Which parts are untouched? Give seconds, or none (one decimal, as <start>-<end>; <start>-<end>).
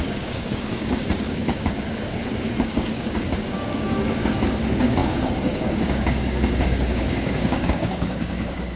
none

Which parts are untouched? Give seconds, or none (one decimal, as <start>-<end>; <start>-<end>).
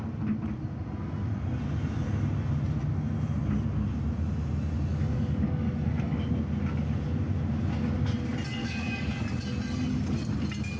0.0-4.9; 6.2-8.6; 9.1-10.8